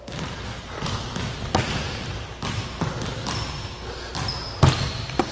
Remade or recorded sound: recorded